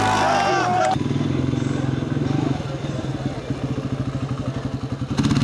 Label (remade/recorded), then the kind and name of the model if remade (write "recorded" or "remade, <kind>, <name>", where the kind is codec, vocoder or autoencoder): recorded